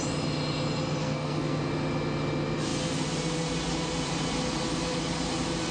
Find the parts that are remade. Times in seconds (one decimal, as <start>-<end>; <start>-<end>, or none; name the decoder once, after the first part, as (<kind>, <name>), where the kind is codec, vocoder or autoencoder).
1.0-1.6 (codec, SNAC)